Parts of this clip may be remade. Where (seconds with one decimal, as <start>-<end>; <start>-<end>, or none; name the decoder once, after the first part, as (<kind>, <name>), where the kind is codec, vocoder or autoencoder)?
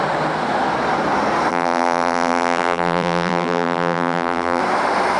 1.5-4.6 (vocoder, BigVGAN v2)